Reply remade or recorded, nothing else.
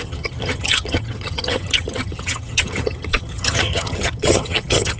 remade